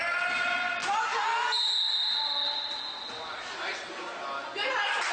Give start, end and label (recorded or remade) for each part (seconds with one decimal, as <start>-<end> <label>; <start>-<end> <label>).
0.0-5.1 recorded